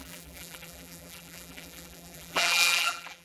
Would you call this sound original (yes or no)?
no